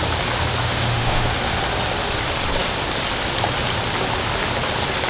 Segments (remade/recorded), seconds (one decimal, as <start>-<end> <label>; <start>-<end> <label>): 0.0-0.6 recorded; 0.6-1.3 remade; 1.3-5.1 recorded